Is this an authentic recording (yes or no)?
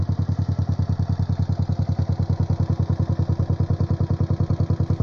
yes